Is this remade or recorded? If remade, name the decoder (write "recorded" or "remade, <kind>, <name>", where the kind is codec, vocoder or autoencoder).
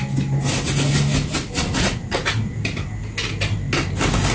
recorded